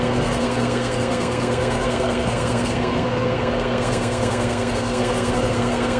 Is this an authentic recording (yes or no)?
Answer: no